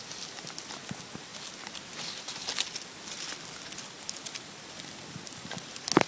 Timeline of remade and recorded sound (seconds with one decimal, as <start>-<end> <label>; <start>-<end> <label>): 0.0-6.1 recorded